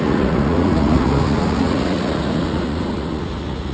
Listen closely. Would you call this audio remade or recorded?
remade